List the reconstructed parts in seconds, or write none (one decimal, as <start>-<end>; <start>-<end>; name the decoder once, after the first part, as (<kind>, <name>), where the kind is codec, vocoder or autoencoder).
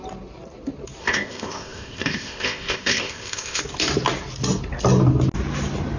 1.0-3.6 (codec, ZipCodec)